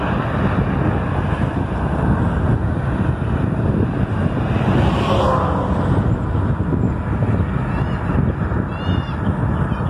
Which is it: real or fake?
real